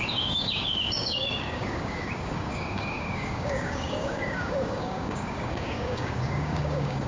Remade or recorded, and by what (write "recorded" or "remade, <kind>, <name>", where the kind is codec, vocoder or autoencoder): remade, codec, DAC